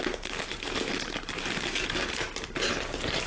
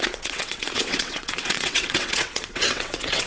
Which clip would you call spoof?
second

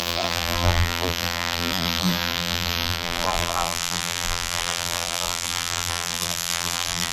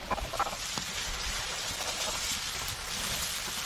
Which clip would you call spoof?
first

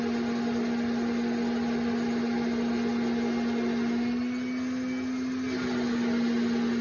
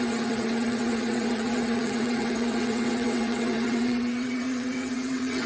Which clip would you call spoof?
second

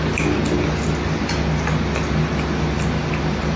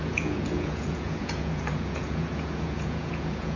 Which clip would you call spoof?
second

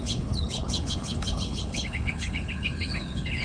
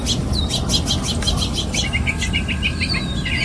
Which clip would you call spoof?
first